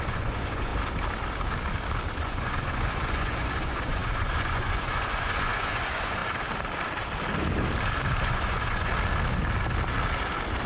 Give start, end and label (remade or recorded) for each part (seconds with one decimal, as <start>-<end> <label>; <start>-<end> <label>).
0.0-0.7 remade; 0.7-2.2 recorded; 2.2-6.2 remade; 6.2-8.2 recorded; 8.2-8.9 remade; 8.9-10.7 recorded